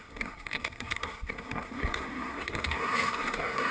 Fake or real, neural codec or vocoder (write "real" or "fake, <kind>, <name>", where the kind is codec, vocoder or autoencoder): fake, codec, SNAC